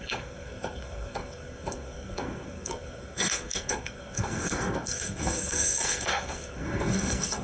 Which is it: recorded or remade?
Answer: remade